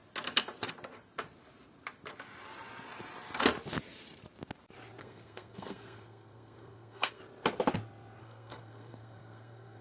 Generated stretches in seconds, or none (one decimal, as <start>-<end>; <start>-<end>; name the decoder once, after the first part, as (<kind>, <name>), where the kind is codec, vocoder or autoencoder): 5.0-7.2 (codec, SNAC); 8.2-9.8